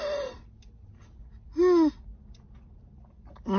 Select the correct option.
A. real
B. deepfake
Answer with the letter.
A